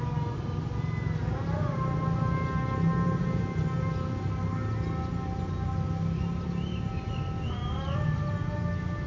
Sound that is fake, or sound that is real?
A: real